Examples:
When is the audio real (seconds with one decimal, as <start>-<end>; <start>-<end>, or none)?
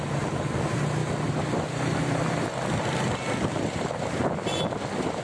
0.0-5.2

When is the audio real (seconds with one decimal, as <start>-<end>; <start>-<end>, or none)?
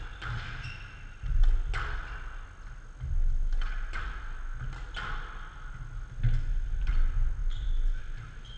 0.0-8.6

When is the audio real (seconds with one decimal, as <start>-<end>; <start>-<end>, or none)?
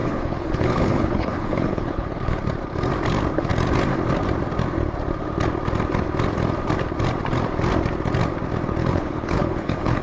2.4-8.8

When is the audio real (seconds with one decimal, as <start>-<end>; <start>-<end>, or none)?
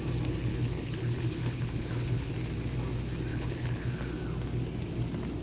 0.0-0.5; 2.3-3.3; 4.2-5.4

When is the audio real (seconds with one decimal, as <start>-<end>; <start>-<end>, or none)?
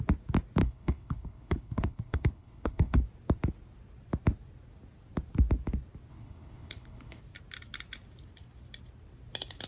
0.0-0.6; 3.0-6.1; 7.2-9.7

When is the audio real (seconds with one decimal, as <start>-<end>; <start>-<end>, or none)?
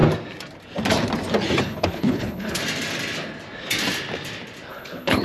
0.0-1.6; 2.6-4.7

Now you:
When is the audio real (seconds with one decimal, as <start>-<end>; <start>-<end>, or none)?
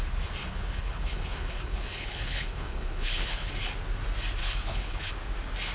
0.0-0.4; 3.5-4.4; 5.1-5.7